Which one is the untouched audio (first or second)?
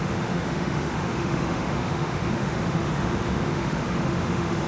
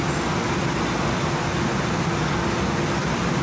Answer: second